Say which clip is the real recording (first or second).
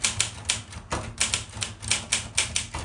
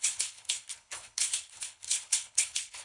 first